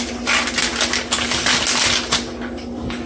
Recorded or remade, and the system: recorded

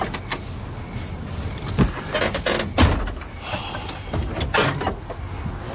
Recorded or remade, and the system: recorded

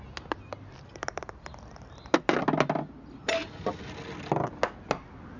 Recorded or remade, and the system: recorded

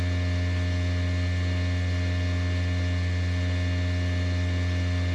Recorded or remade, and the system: recorded